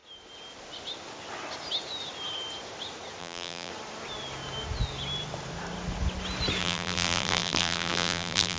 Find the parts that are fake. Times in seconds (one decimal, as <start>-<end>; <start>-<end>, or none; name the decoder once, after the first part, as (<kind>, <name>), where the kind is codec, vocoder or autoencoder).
3.2-3.7 (vocoder, BigVGAN v2); 6.6-8.6